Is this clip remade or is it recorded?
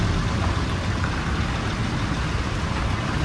recorded